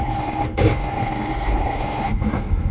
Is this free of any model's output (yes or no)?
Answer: no